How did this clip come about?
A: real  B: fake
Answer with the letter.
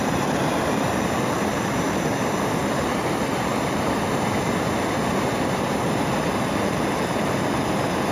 B